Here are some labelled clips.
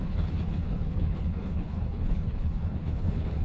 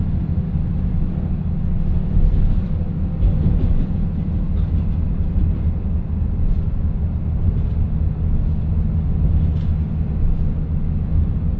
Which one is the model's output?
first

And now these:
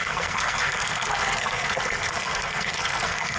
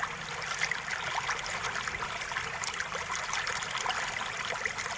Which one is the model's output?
first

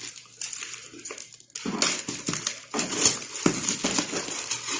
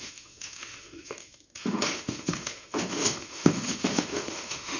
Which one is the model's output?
second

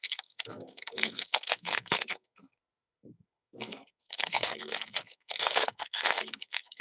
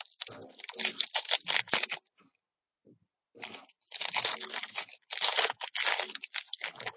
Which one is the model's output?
first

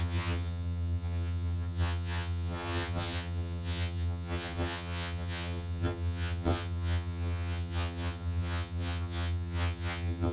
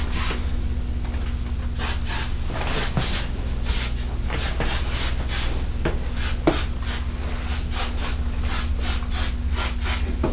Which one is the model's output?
first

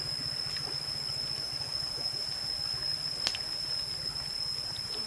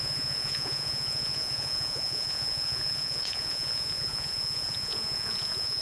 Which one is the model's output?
second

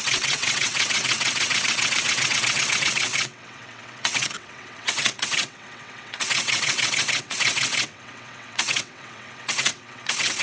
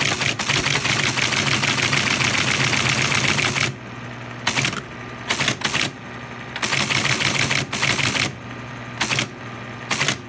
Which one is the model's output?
first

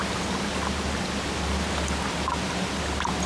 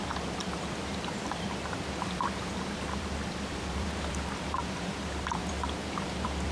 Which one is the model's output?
second